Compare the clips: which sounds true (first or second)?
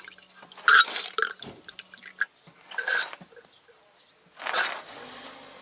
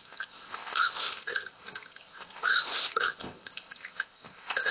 first